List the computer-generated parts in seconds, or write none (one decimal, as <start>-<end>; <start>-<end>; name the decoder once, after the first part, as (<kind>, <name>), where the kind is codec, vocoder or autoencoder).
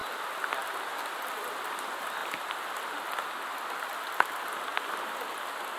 none